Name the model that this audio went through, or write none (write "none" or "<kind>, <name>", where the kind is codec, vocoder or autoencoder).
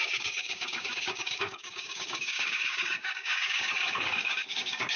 codec, DAC